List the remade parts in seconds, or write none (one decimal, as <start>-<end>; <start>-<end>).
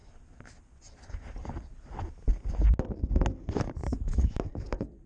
3.8-4.4